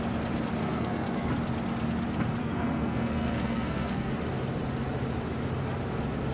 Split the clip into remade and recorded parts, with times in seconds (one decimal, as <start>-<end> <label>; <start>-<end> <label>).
0.0-0.6 recorded; 0.6-1.3 remade; 1.3-2.4 recorded; 2.4-4.1 remade; 4.1-6.3 recorded